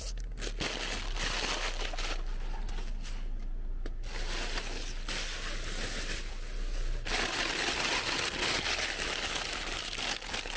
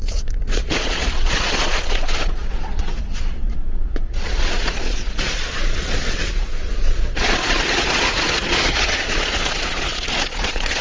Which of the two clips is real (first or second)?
first